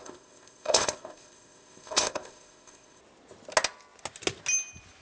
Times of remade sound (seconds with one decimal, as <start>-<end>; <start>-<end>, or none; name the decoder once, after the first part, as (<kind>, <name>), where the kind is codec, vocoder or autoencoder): 0.0-3.0 (codec, ZipCodec)